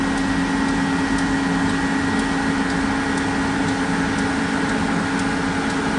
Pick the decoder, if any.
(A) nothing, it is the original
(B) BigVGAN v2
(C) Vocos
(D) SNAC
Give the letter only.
A